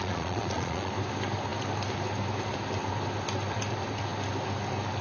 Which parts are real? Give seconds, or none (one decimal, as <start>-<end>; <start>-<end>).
0.9-5.0